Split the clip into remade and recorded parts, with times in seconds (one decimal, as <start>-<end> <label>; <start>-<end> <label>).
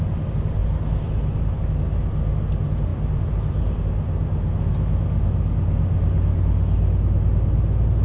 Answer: 0.0-8.0 recorded